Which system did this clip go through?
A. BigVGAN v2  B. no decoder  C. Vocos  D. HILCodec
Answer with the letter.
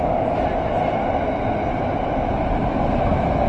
B